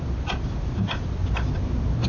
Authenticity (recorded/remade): recorded